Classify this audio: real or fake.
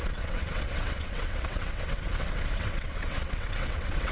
fake